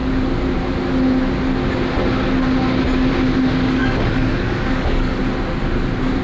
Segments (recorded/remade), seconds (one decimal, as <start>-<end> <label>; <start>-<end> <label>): 0.0-3.8 recorded; 3.8-5.2 remade; 5.2-6.2 recorded